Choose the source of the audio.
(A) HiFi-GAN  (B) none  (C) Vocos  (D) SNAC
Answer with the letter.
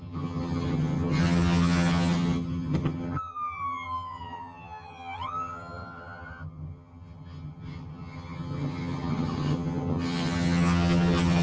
A